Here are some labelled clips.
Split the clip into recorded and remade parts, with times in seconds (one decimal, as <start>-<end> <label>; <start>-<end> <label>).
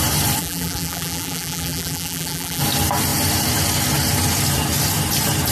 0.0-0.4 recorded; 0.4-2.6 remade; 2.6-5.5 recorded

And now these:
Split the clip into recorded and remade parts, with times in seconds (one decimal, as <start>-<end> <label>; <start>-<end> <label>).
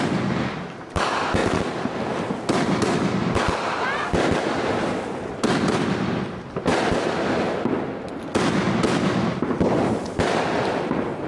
0.0-11.3 recorded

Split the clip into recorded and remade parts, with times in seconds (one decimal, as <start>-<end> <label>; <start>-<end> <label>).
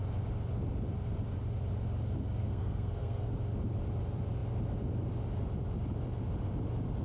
0.0-2.4 recorded; 2.4-3.3 remade; 3.3-7.0 recorded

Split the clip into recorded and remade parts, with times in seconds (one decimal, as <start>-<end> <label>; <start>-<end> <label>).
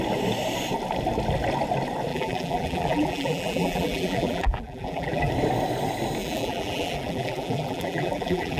0.0-2.1 recorded; 2.1-5.3 remade; 5.3-6.2 recorded; 6.2-8.6 remade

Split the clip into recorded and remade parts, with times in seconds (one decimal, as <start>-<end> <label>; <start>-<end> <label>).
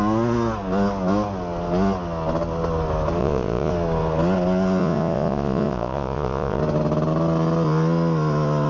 0.0-3.2 recorded; 3.2-3.7 remade; 3.7-4.8 recorded; 4.8-6.6 remade; 6.6-8.7 recorded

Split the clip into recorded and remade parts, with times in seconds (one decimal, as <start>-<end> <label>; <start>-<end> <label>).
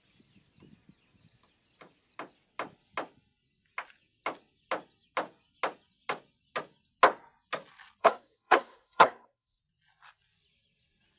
0.0-8.0 recorded; 8.0-9.6 remade; 9.6-11.2 recorded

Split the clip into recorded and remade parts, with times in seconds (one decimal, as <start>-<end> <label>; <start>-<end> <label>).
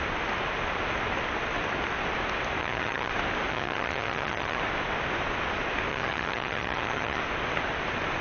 0.0-2.6 recorded; 2.6-3.1 remade; 3.1-3.5 recorded; 3.5-4.6 remade; 4.6-5.9 recorded; 5.9-7.2 remade; 7.2-8.2 recorded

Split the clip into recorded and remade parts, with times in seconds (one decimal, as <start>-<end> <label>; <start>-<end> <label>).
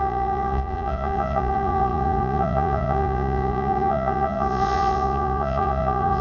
0.0-6.2 remade